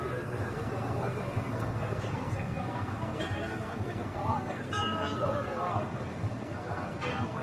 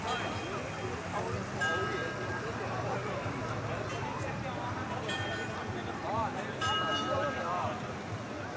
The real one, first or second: second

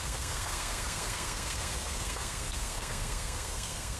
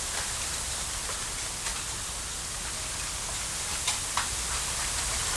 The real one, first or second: second